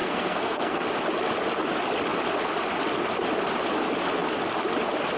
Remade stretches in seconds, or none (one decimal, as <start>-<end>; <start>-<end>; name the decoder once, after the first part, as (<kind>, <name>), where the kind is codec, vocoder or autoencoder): 0.0-0.8 (codec, SNAC)